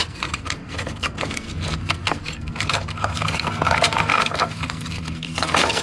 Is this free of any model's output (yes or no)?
no